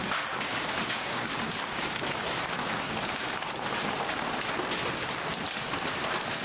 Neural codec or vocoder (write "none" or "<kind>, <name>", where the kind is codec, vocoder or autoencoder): none